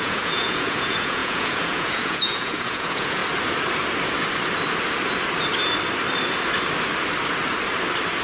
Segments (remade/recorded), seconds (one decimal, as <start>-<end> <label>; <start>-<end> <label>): 0.0-3.2 remade; 3.2-8.2 recorded